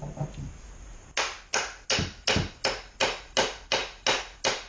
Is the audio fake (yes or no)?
no